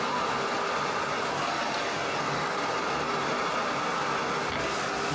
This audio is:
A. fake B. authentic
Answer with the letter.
B